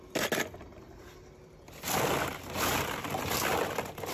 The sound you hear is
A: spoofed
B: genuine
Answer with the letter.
B